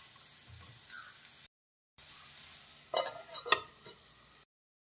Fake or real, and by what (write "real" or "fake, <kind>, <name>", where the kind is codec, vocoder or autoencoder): real